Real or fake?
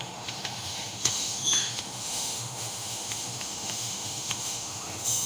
fake